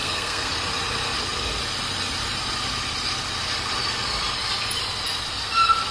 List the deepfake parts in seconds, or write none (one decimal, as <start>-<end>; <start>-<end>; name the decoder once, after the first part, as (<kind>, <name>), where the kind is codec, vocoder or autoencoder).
0.0-0.5 (codec, SNAC)